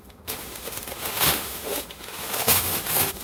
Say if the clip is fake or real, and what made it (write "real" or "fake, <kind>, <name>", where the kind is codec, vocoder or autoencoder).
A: fake, autoencoder, DAC-VAE